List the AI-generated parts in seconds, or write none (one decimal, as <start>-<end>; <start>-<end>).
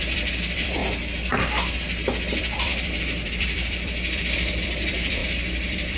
0.0-0.8; 2.3-6.0